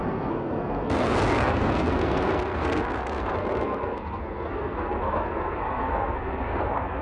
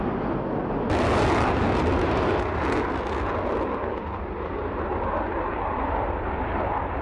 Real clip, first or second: second